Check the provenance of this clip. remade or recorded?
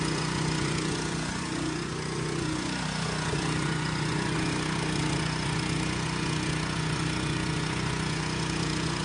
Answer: remade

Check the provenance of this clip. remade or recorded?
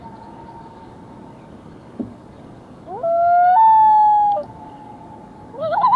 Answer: remade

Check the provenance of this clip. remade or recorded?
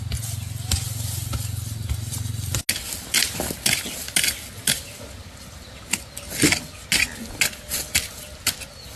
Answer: recorded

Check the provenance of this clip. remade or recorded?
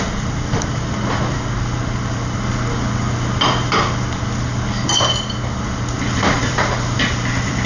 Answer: remade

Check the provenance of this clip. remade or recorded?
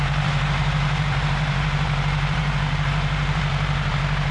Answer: remade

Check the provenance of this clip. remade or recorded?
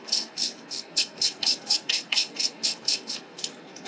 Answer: remade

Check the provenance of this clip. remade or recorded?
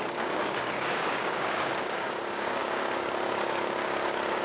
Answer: remade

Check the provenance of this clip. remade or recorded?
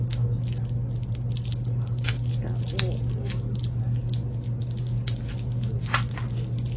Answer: recorded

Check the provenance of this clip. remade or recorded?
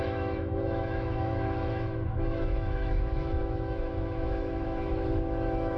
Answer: remade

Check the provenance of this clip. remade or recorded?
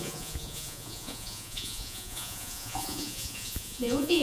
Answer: remade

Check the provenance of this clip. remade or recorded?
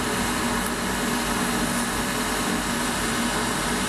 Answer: recorded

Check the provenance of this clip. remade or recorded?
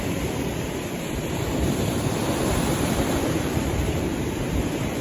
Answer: remade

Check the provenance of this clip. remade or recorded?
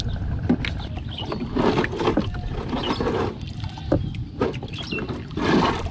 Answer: recorded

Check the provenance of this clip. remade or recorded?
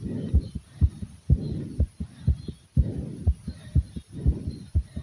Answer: recorded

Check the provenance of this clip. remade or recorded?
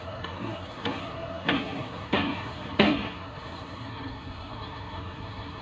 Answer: remade